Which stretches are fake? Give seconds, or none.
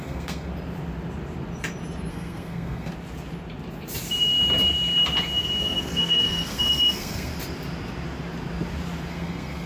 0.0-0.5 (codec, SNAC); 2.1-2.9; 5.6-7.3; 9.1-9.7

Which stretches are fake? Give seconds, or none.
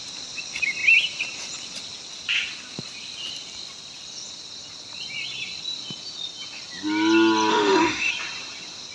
7.5-8.1 (autoencoder, DAC-VAE)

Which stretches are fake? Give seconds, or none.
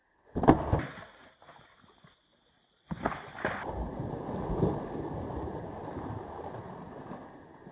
none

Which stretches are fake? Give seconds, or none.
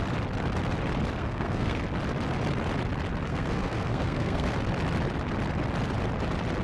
1.2-1.8 (codec, SNAC); 3.3-4.5